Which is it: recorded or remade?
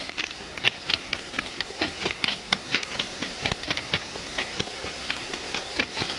remade